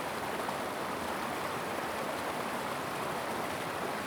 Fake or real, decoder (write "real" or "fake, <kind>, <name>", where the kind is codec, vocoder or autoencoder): real